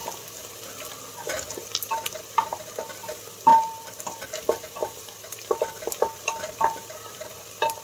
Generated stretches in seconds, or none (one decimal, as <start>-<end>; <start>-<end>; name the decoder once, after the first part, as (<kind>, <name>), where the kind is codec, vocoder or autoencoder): 3.5-4.3 (vocoder, BigVGAN v2); 4.8-7.8